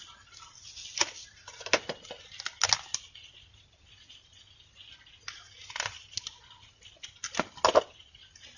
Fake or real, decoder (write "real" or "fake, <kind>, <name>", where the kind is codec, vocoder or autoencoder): real